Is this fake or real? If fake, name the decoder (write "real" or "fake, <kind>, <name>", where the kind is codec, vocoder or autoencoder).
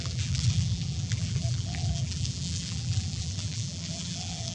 fake, vocoder, BigVGAN v2